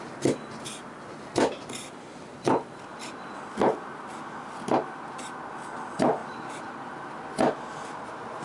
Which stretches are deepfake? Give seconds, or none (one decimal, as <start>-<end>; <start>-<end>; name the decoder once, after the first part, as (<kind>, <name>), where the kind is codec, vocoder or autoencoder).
none

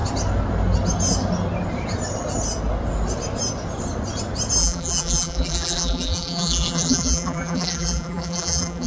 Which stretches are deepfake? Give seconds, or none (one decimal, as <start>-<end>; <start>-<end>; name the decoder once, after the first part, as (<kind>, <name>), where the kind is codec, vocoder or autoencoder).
4.6-8.9 (vocoder, BigVGAN v2)

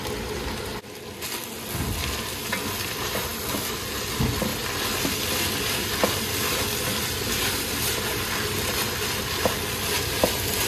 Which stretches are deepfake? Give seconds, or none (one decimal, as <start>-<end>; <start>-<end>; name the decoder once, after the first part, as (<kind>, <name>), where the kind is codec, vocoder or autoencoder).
none